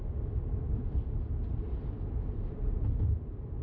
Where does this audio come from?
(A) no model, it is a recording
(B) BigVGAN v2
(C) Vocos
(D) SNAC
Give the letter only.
A